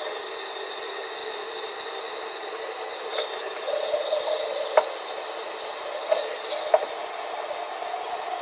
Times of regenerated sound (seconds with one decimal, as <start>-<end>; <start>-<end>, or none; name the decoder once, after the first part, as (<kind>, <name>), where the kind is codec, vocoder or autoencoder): none